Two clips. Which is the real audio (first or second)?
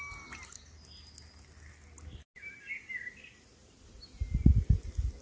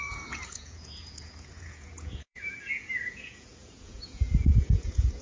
first